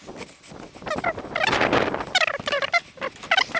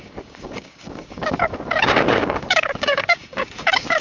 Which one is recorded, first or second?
first